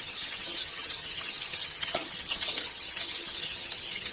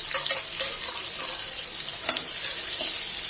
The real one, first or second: second